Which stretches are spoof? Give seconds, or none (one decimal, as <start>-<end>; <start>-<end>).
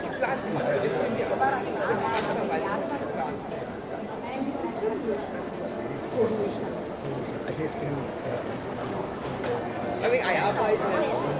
none